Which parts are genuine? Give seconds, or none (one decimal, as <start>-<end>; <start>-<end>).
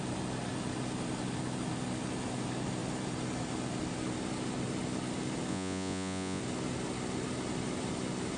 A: 0.0-5.5; 6.4-8.4